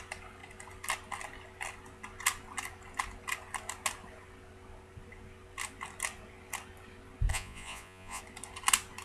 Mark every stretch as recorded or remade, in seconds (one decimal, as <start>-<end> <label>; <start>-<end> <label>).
0.0-7.3 recorded; 7.3-8.2 remade; 8.2-9.0 recorded